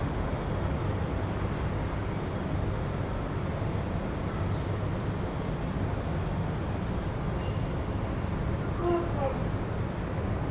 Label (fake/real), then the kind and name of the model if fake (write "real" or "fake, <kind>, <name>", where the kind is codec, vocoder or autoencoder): real